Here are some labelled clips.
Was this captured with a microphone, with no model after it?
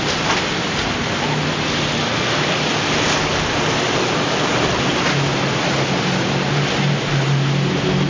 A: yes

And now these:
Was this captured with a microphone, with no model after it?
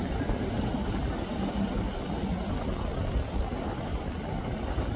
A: yes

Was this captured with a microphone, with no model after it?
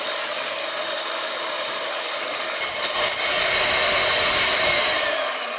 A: yes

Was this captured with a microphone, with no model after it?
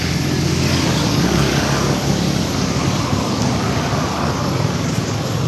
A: no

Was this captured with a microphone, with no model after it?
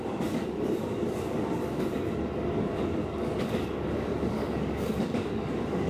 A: no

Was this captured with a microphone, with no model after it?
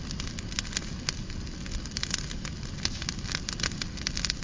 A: yes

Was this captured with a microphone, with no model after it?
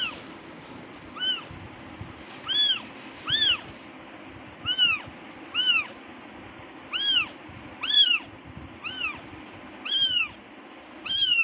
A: yes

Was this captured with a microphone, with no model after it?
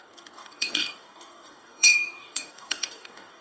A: no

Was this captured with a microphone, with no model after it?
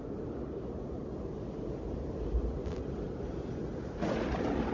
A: yes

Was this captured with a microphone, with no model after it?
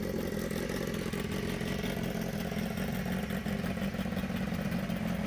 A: yes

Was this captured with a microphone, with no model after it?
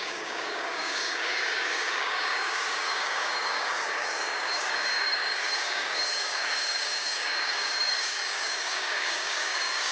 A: no